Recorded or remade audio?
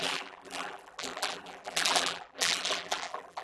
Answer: remade